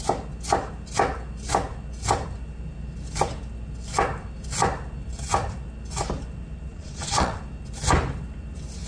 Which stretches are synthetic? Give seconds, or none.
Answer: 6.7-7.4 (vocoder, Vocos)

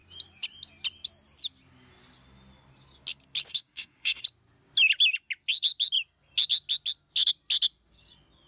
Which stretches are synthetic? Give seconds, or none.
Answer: 3.5-4.2 (codec, SNAC)

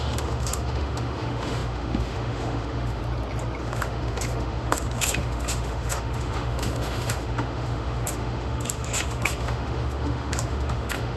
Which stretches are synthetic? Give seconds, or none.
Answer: 0.0-3.0 (autoencoder, DAC-VAE); 3.6-11.2

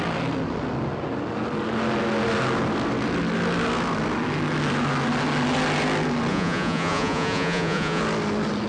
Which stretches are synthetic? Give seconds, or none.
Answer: 6.3-8.0 (vocoder, Vocos)

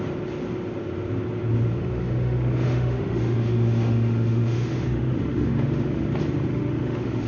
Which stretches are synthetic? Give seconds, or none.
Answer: 1.7-6.1 (autoencoder, DAC-VAE); 6.5-7.3

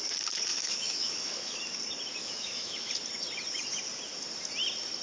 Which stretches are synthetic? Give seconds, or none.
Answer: 0.5-1.6 (autoencoder, DAC-VAE); 2.2-2.9

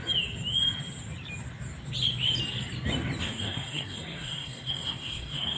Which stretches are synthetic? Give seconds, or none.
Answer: 3.2-5.6 (codec, SNAC)

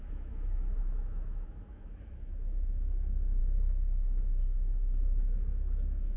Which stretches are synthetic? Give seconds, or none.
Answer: 0.0-6.2 (autoencoder, DAC-VAE)